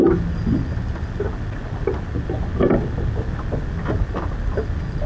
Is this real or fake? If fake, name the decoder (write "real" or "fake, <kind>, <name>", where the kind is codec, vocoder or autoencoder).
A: real